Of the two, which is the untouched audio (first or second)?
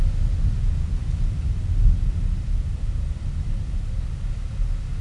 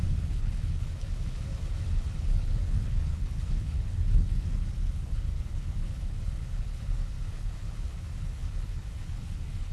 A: first